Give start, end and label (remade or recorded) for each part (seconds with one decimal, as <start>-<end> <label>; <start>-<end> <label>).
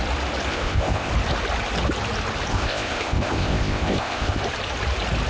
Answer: 0.0-0.5 recorded; 0.5-1.1 remade; 1.1-2.5 recorded; 2.5-4.4 remade; 4.4-5.3 recorded